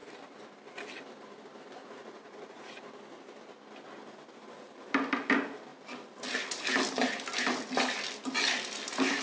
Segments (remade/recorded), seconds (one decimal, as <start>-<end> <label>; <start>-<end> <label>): 0.0-1.8 recorded; 1.8-2.8 remade; 2.8-9.2 recorded